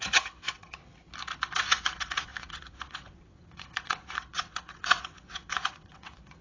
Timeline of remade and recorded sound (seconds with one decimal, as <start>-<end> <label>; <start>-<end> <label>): 0.0-0.8 remade; 0.8-1.5 recorded; 1.5-6.4 remade